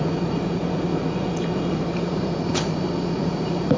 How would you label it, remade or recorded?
remade